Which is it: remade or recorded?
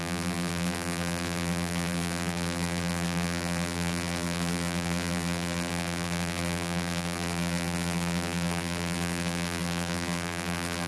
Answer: remade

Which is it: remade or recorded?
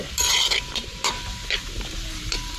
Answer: remade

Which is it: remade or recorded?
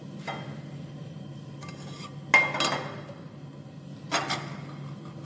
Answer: recorded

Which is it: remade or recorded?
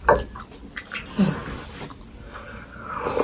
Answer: recorded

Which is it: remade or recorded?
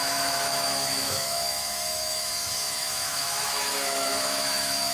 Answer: remade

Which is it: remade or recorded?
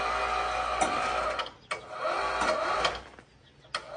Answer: recorded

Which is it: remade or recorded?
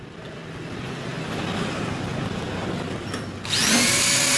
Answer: recorded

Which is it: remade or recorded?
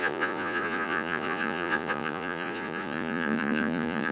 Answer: remade